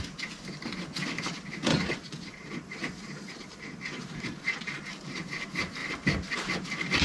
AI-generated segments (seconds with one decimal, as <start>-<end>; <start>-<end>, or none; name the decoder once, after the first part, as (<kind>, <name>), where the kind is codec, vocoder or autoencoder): 1.7-4.8 (vocoder, Vocos)